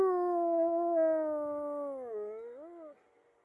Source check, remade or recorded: recorded